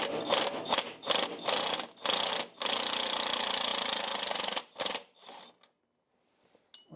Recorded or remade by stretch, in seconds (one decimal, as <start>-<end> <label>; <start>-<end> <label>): 0.0-7.0 recorded